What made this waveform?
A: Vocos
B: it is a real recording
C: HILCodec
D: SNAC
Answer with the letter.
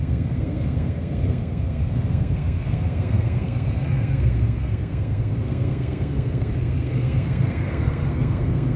D